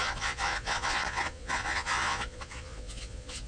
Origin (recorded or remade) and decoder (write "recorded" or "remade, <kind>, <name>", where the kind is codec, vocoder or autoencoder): remade, vocoder, Vocos